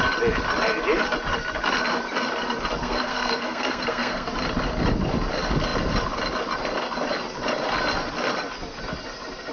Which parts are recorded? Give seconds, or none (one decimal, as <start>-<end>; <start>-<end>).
0.0-2.8; 4.3-9.5

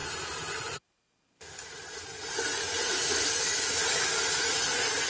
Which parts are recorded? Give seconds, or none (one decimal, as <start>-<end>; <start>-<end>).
0.0-5.1

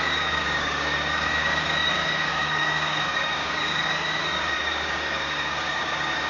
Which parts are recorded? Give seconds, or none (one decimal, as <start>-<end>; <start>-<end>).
none

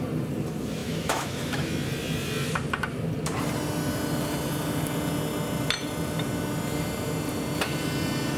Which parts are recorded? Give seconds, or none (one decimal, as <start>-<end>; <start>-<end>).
0.0-0.8; 1.7-8.4

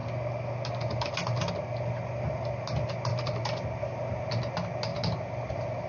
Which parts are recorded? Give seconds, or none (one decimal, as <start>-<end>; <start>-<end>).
0.0-5.9

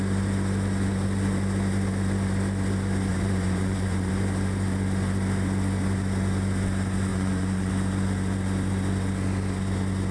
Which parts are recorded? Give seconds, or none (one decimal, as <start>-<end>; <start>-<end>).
0.0-3.1; 4.1-7.1; 7.7-10.1

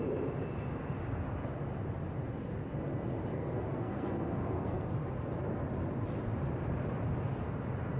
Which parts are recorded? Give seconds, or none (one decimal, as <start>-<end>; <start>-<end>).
0.0-3.3; 4.9-8.0

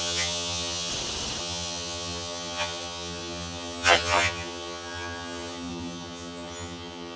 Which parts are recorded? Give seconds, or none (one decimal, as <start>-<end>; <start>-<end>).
0.9-1.4